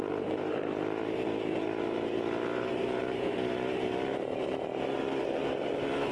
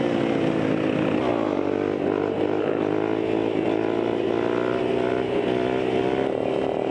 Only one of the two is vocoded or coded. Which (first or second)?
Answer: first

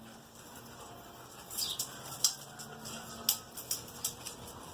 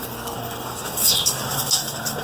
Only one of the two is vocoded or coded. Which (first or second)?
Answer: second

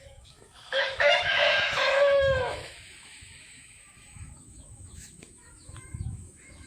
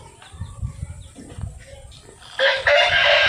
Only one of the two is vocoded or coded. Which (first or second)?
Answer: first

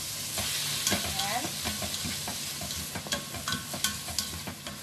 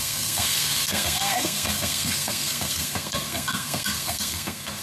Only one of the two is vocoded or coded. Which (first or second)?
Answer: second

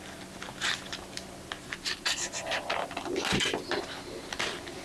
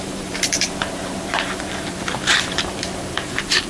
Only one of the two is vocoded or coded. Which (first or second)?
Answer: second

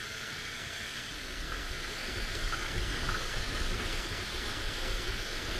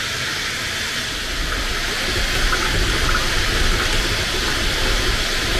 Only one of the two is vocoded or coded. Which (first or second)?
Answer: first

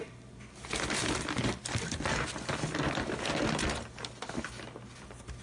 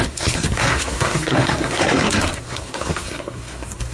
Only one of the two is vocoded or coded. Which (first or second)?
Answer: second